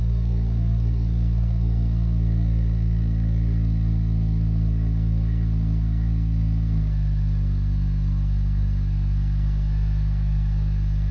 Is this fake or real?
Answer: fake